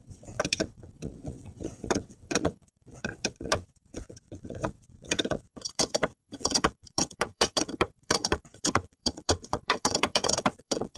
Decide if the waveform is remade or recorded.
remade